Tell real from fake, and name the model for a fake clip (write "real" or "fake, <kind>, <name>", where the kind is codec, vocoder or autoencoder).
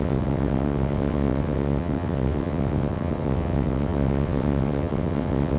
fake, vocoder, WaveNeXt